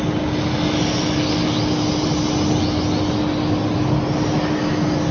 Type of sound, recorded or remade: recorded